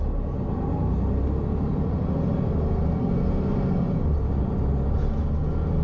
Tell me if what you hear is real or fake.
real